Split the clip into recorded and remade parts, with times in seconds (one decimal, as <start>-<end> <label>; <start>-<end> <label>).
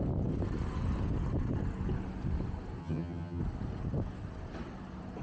0.0-2.8 recorded; 2.8-3.4 remade; 3.4-5.2 recorded